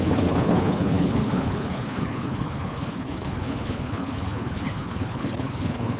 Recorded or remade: remade